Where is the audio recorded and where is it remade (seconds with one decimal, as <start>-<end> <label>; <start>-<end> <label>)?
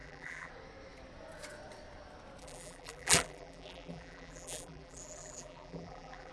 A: 0.0-0.5 remade; 0.5-2.4 recorded; 2.4-6.3 remade